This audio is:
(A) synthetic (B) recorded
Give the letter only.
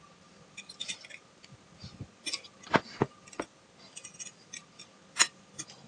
B